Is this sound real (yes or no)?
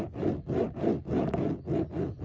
yes